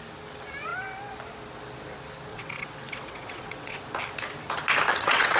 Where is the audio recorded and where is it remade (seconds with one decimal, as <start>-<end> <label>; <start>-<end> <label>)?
0.0-2.3 recorded; 2.3-3.8 remade; 3.8-4.9 recorded; 4.9-5.4 remade